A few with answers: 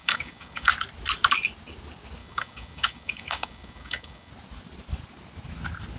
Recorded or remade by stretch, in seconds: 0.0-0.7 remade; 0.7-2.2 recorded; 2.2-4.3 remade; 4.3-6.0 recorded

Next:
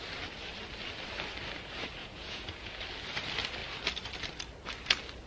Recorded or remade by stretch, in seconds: 0.0-2.0 recorded; 2.0-2.8 remade; 2.8-5.3 recorded

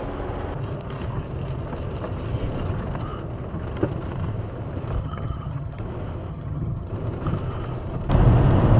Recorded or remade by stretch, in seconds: 0.0-5.0 recorded; 5.0-5.8 remade; 5.8-6.3 recorded; 6.3-6.9 remade; 6.9-8.8 recorded

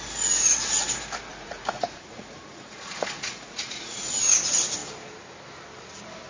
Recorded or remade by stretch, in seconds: 0.0-1.3 recorded; 1.3-4.1 remade; 4.1-6.3 recorded

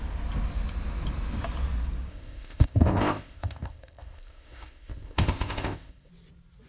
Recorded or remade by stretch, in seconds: 0.0-2.1 recorded; 2.1-6.1 remade; 6.1-6.7 recorded